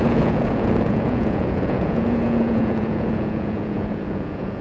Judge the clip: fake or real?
fake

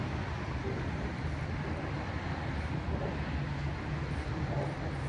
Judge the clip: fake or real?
real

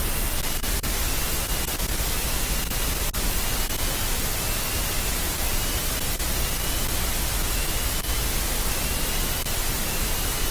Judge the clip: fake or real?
real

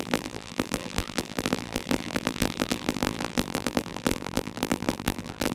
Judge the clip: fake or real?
fake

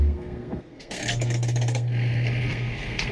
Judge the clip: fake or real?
fake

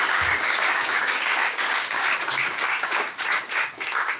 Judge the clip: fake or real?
fake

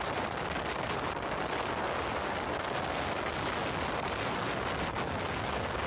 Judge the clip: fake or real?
real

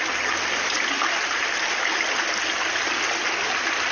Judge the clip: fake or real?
real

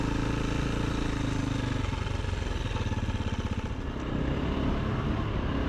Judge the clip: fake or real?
real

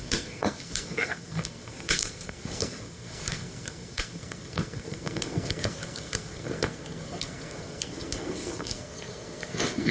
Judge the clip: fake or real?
fake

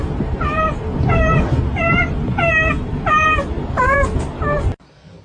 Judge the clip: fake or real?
real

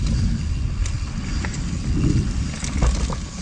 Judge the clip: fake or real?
real